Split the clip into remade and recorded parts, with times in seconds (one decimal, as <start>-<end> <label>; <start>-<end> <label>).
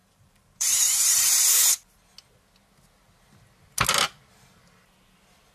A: 0.0-1.4 remade; 1.4-5.5 recorded